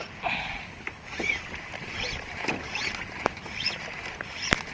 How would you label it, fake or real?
real